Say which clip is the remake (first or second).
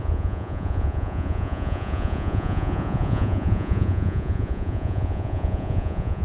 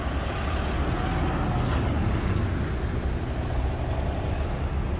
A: first